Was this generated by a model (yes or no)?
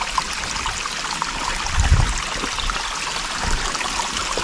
no